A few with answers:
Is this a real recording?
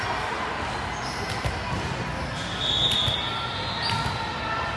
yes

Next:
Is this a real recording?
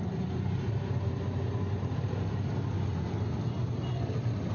yes